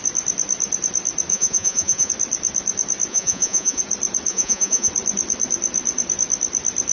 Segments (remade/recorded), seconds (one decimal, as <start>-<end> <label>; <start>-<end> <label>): 0.0-1.3 recorded; 1.3-2.1 remade; 2.1-3.1 recorded; 3.1-3.8 remade; 3.8-4.3 recorded; 4.3-4.9 remade; 4.9-6.9 recorded